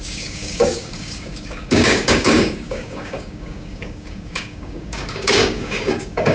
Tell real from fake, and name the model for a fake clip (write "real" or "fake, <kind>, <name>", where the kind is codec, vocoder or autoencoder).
fake, codec, DAC